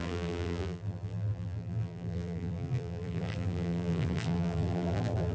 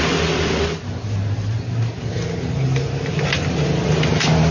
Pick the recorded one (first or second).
second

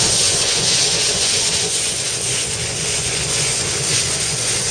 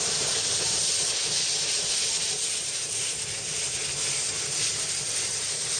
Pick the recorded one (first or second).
second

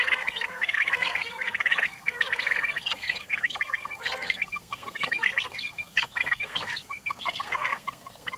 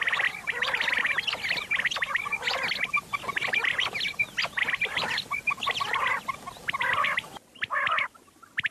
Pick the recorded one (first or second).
second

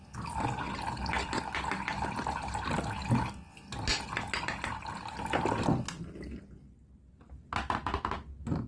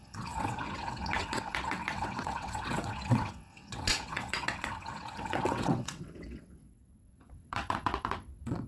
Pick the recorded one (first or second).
first